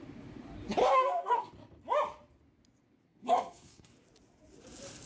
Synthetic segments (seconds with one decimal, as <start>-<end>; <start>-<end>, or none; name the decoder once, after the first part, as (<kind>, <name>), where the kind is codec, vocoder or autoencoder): 0.8-1.5 (codec, SNAC); 3.1-3.9